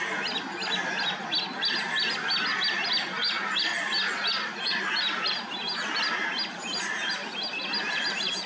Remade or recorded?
recorded